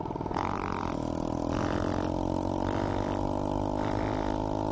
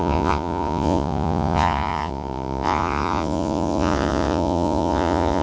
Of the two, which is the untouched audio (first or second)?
first